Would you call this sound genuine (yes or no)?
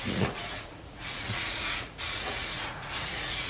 no